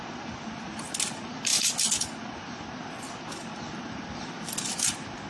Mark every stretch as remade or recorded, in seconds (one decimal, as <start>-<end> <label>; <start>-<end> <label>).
0.0-5.3 recorded